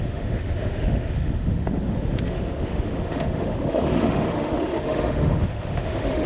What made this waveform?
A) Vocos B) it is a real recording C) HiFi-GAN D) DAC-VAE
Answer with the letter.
D